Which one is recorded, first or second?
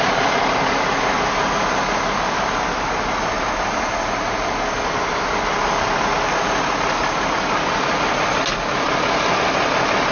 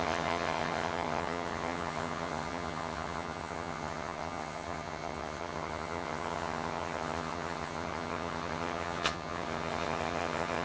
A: first